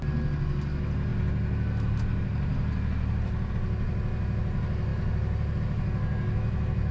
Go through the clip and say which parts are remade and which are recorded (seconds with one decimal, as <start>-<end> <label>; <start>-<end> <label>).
0.0-6.9 recorded